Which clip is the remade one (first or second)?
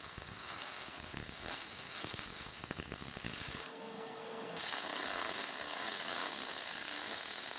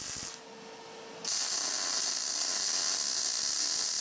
first